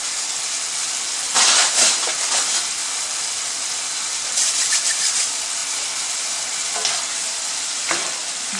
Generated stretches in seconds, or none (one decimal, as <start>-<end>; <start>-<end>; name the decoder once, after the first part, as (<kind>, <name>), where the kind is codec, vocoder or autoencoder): 0.0-2.8 (vocoder, BigVGAN v2); 3.4-8.6